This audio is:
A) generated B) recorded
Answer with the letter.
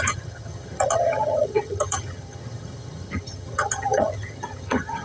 A